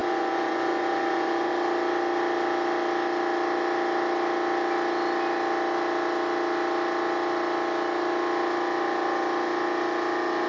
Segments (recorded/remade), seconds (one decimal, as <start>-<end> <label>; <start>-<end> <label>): 0.0-1.5 remade; 1.5-10.5 recorded